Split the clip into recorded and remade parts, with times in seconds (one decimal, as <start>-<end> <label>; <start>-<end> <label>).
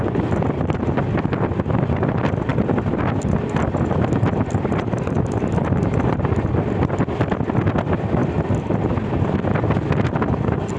0.0-10.8 recorded